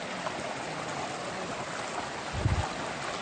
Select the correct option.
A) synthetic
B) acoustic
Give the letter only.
B